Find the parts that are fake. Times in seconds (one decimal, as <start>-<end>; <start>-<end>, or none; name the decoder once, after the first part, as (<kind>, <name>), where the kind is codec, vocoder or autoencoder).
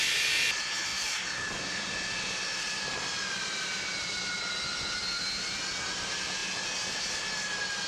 0.9-4.5 (vocoder, BigVGAN v2)